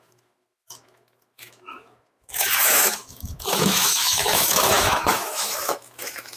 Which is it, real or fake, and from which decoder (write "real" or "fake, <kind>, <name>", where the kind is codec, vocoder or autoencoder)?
fake, autoencoder, DAC-VAE